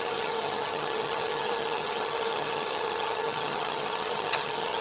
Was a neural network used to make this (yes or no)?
yes